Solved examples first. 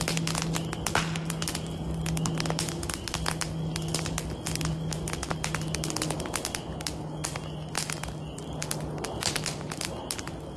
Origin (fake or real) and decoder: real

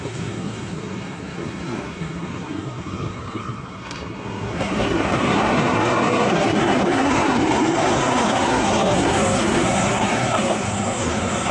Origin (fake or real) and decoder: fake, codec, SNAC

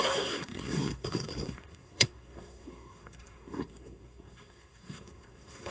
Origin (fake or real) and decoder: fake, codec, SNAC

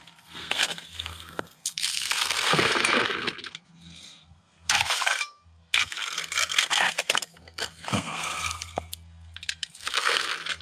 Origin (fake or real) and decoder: fake, codec, SNAC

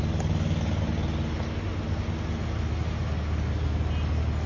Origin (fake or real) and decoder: real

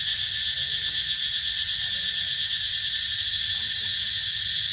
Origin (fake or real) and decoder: real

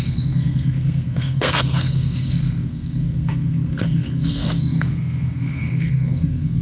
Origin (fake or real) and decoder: fake, codec, SNAC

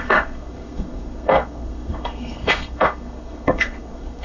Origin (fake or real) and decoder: fake, codec, SNAC